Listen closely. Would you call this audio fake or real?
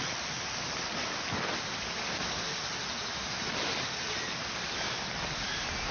real